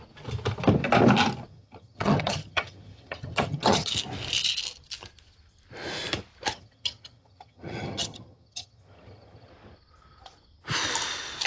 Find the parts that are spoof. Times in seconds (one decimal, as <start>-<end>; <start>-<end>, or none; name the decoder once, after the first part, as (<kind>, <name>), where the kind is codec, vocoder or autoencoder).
1.5-3.9 (vocoder, HiFi-GAN); 6.5-9.5